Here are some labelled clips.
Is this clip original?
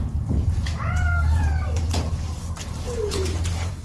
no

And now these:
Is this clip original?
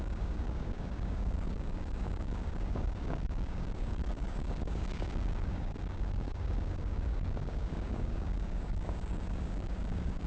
no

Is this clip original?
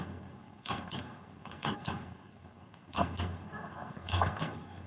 no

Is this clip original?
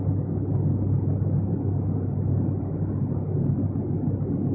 yes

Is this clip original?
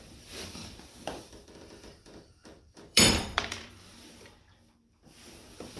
no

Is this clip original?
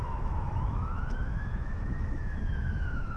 no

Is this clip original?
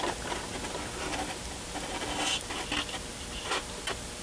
yes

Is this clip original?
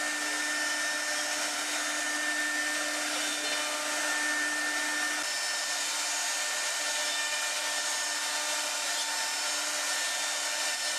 yes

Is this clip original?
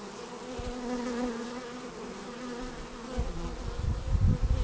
yes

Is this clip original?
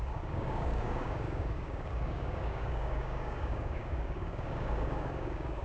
no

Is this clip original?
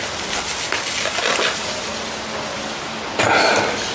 yes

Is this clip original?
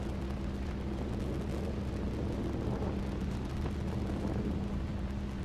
yes